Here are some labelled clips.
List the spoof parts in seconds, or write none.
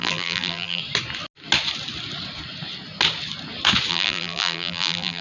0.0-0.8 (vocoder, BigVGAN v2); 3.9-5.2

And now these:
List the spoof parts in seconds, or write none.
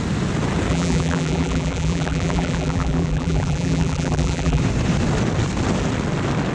0.7-4.6 (vocoder, BigVGAN v2)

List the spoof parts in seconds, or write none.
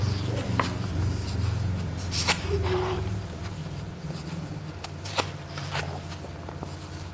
0.0-3.0 (vocoder, BigVGAN v2); 3.6-5.8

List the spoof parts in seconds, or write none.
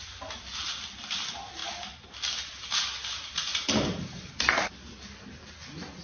3.5-4.7 (vocoder, BigVGAN v2)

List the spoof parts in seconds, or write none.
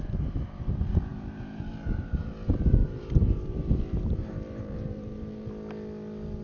1.1-2.3 (vocoder, BigVGAN v2); 2.8-5.5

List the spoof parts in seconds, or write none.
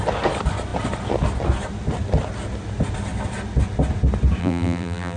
4.4-5.2 (vocoder, BigVGAN v2)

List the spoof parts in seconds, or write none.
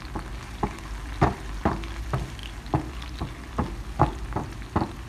none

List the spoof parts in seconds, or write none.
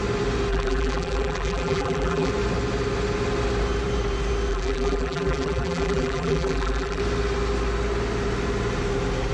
0.5-2.3 (vocoder, BigVGAN v2); 4.5-7.0